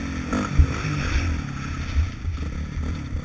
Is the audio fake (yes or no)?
no